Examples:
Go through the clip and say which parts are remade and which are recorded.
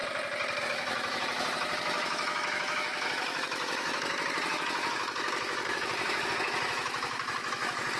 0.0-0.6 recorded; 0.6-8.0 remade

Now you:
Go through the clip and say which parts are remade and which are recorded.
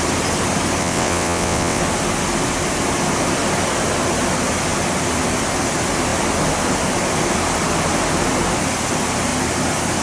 0.0-0.8 recorded; 0.8-1.8 remade; 1.8-10.0 recorded